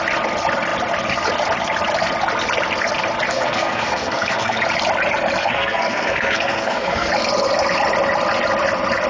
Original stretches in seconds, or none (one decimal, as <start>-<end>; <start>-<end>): 0.0-3.3; 4.6-5.4; 7.1-9.1